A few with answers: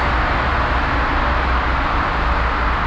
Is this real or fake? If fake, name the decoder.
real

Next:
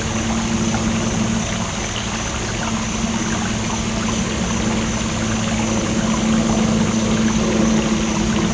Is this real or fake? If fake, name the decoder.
real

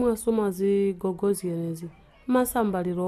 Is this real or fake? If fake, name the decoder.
real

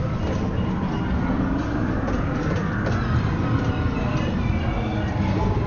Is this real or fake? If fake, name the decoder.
real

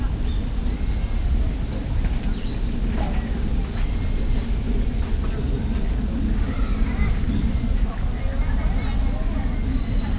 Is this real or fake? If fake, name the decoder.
real